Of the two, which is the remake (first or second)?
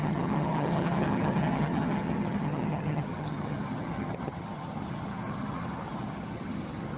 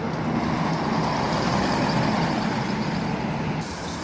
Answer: first